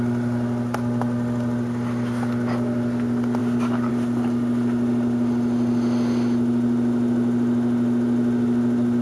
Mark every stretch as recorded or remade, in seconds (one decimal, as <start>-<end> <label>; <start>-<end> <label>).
0.0-3.4 recorded; 3.4-3.9 remade; 3.9-9.0 recorded